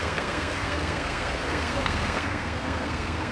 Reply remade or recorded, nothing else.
remade